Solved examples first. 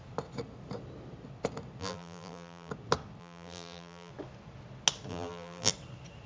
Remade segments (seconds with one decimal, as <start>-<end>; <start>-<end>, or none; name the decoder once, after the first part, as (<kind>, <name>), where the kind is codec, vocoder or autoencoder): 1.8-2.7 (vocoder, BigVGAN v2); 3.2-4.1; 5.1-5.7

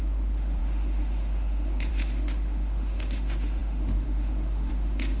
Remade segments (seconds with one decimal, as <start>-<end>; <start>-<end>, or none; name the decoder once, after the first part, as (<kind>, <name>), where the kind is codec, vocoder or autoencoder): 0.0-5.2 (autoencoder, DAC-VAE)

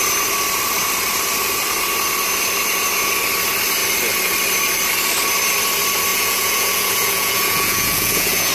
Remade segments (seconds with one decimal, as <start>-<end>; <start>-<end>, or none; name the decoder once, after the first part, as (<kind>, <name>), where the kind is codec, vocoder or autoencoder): 6.1-8.5 (vocoder, Vocos)

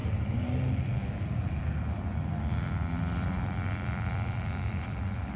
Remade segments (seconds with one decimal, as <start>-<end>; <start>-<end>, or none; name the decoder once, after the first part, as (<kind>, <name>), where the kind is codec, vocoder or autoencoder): 0.0-2.4 (vocoder, BigVGAN v2)

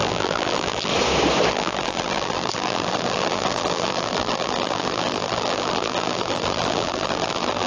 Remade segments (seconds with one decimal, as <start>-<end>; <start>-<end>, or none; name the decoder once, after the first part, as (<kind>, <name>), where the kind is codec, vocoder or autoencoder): 0.0-0.9 (vocoder, BigVGAN v2); 1.5-7.7

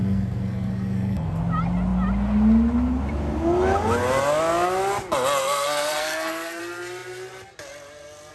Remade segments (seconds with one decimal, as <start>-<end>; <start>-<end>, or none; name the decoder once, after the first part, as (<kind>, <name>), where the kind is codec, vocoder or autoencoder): 0.0-1.4 (codec, SNAC); 5.4-6.6

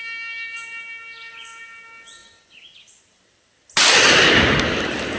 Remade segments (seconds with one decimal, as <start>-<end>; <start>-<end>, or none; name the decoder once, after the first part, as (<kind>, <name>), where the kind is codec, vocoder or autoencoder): none